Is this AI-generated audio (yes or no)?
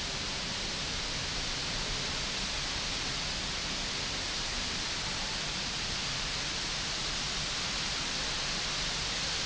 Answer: no